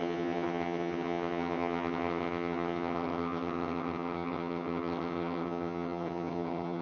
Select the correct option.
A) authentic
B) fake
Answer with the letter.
B